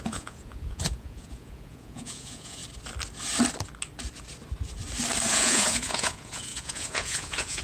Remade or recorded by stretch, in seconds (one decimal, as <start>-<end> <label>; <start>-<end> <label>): 0.0-2.6 remade; 2.6-5.3 recorded; 5.3-7.6 remade